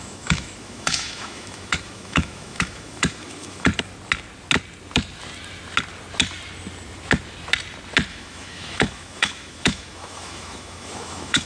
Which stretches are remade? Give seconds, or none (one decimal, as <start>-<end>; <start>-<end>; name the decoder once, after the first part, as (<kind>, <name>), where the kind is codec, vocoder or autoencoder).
0.0-3.7 (autoencoder, DAC-VAE); 8.1-11.5